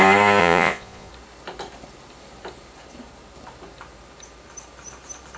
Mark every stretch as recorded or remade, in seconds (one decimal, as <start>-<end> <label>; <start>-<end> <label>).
0.0-0.4 recorded; 0.4-1.1 remade; 1.1-5.4 recorded